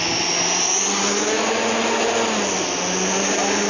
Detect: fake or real real